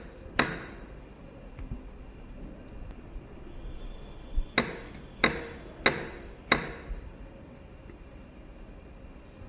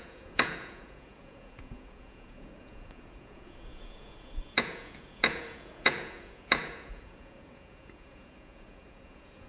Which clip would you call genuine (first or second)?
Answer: first